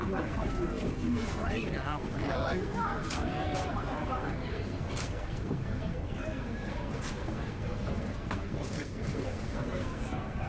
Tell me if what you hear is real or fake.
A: fake